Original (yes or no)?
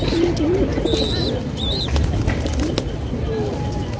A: yes